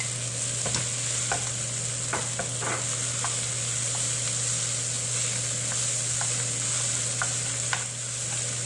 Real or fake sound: real